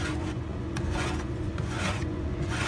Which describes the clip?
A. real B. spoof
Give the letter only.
B